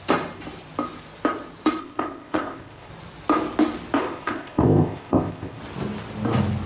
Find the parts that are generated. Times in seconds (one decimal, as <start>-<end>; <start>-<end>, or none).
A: 1.8-2.9; 4.0-5.6